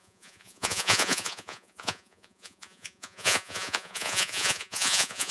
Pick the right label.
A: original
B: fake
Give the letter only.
B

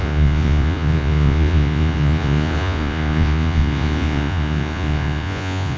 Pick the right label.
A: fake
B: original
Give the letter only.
A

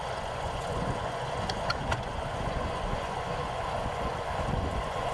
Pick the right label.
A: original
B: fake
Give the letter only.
B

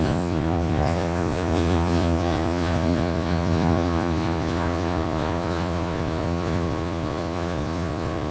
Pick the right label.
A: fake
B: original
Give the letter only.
A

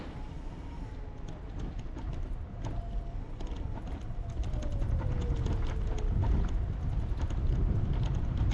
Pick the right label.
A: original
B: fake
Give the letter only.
A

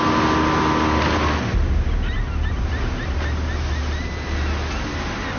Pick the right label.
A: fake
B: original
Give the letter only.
B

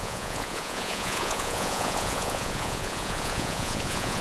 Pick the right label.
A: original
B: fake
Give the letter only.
B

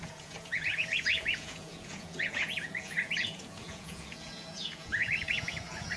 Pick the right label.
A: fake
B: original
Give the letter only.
A